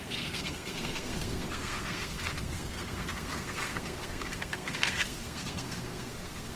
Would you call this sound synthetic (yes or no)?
yes